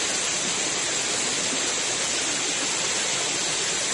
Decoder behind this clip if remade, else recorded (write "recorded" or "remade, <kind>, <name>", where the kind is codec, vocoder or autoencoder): recorded